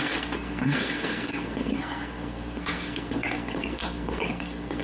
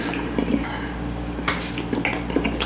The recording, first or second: second